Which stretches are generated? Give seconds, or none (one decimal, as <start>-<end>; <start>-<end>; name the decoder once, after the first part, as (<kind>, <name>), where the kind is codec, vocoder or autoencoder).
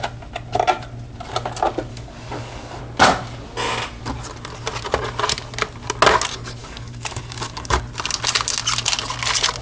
1.9-2.8 (codec, DAC); 6.6-7.8